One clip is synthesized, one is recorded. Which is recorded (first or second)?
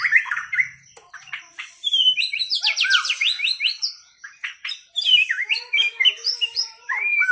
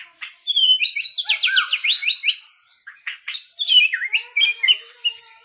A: second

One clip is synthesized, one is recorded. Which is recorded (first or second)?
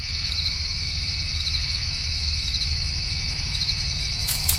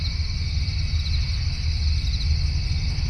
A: second